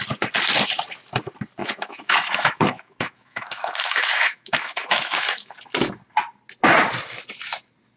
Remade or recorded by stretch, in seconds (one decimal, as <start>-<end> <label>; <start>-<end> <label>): 0.0-1.6 recorded; 1.6-5.5 remade; 5.5-8.0 recorded

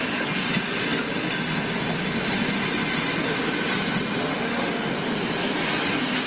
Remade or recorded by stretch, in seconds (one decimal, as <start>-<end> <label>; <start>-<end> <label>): 0.0-4.3 recorded; 4.3-4.9 remade; 4.9-6.3 recorded

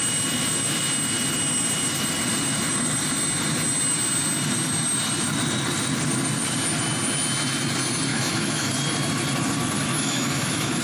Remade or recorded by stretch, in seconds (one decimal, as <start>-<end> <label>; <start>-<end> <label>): 0.0-8.1 recorded; 8.1-8.7 remade; 8.7-9.9 recorded; 9.9-10.8 remade

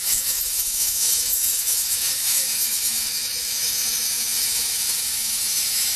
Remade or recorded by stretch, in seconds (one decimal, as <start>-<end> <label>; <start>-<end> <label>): 0.0-6.0 remade

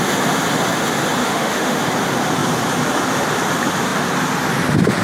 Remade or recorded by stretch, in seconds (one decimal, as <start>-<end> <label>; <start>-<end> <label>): 0.0-1.2 recorded; 1.2-1.8 remade; 1.8-5.0 recorded

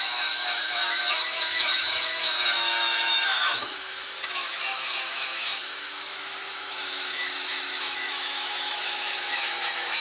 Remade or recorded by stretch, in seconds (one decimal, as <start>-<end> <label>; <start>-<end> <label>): 0.0-10.0 remade

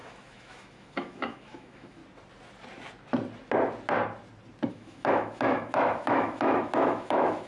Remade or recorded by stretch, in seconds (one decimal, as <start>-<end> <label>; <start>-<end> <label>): 0.0-2.0 remade; 2.0-4.7 recorded; 4.7-7.5 remade

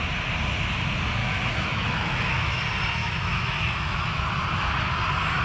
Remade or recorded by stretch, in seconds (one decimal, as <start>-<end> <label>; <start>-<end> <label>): 0.0-1.2 recorded; 1.2-2.6 remade; 2.6-3.0 recorded; 3.0-4.2 remade; 4.2-5.4 recorded